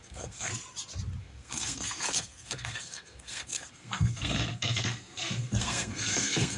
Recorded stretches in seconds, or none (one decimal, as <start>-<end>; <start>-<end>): 0.5-1.2

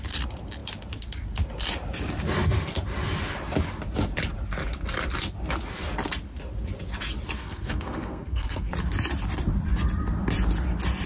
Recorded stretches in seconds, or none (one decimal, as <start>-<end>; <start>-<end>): 0.0-7.4; 8.7-11.1